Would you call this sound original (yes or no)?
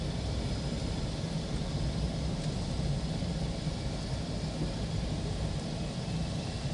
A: yes